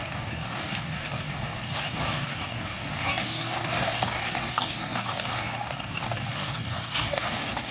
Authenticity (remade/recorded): remade